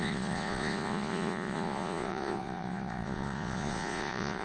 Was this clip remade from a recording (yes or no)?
yes